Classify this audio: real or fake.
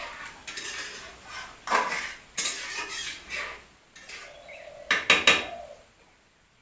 real